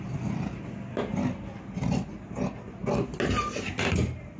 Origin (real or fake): real